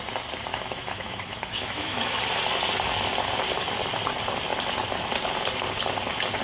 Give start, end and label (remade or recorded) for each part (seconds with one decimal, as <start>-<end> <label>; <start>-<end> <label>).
0.0-0.5 recorded; 0.5-2.2 remade; 2.2-6.4 recorded